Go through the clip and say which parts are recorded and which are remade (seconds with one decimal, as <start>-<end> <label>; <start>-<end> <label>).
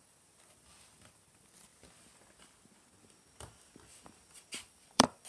0.0-1.7 remade; 1.7-4.6 recorded; 4.6-5.3 remade